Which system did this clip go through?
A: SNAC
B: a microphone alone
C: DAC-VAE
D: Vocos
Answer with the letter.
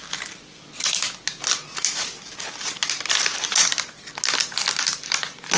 B